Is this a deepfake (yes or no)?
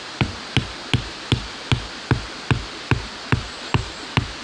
no